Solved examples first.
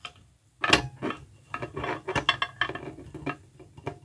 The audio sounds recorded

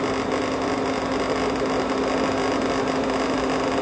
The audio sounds recorded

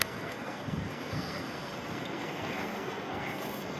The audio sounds remade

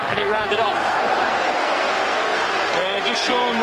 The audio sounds remade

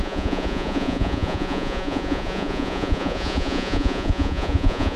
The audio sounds remade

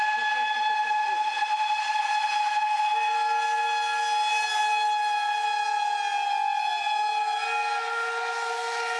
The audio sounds recorded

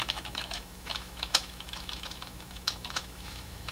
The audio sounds remade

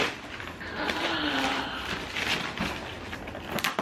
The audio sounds recorded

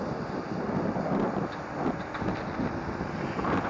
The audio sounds recorded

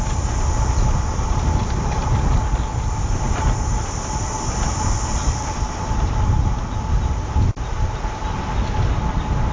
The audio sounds recorded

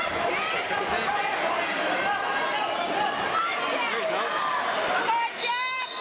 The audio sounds recorded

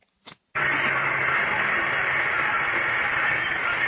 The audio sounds recorded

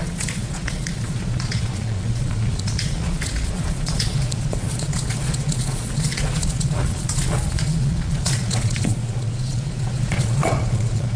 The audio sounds remade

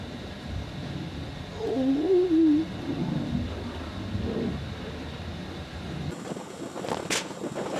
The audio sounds recorded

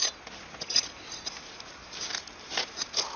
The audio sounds recorded